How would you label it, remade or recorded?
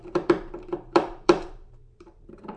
remade